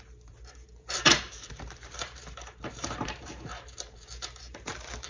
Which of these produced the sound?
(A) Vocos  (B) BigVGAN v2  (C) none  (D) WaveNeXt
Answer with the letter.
B